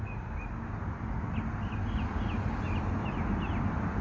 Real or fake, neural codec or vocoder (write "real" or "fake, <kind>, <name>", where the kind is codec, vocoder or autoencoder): real